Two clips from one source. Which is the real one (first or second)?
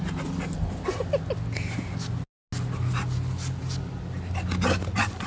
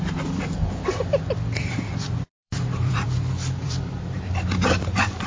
first